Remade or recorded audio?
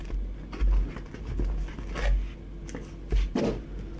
recorded